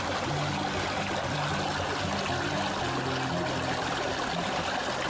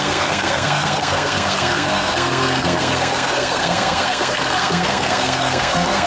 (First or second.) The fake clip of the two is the second